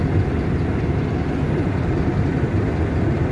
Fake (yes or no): no